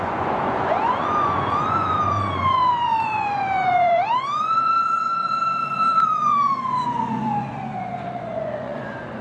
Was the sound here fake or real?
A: fake